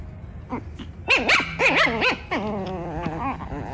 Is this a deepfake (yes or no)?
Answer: no